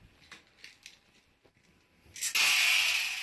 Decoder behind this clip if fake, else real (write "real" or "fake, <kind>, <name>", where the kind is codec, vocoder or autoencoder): real